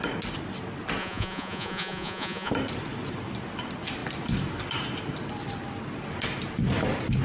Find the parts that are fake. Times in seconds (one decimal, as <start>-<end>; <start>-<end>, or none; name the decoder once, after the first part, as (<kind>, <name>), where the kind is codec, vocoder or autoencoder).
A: 1.0-2.5 (vocoder, Vocos)